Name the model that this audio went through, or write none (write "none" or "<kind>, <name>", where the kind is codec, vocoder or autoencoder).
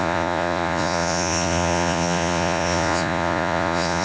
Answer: vocoder, Vocos